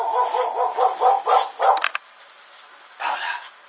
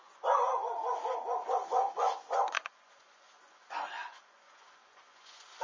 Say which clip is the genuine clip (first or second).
first